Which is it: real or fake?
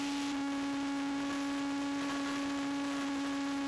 real